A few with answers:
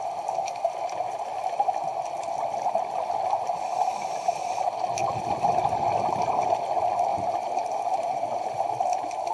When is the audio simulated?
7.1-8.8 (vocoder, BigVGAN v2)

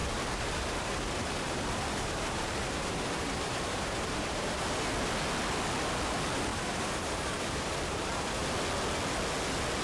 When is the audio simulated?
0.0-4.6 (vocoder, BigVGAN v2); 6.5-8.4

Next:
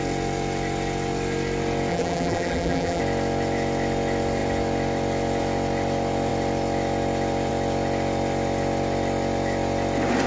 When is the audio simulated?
1.9-3.0 (vocoder, BigVGAN v2)

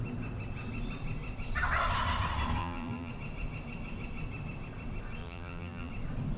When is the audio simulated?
2.6-3.1 (vocoder, BigVGAN v2); 5.2-5.9